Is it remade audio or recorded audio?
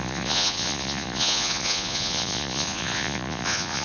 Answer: remade